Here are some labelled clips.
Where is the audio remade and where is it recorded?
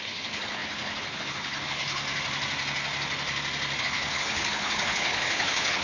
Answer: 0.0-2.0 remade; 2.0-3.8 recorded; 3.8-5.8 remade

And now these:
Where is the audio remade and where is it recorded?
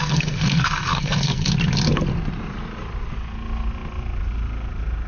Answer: 0.0-1.5 remade; 1.5-5.1 recorded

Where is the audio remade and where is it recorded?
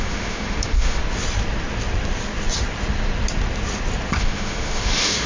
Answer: 0.0-1.0 remade; 1.0-4.2 recorded; 4.2-5.3 remade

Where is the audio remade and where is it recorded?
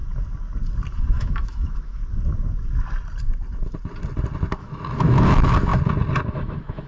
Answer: 0.0-0.9 recorded; 0.9-2.0 remade; 2.0-4.6 recorded; 4.6-5.7 remade; 5.7-6.3 recorded; 6.3-6.9 remade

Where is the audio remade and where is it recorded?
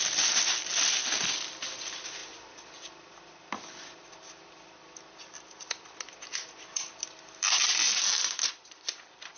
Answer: 0.0-9.4 recorded